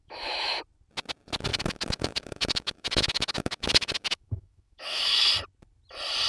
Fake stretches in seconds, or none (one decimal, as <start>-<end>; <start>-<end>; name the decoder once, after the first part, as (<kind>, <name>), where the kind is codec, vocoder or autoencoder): 0.0-0.6 (autoencoder, DAC-VAE); 1.5-5.3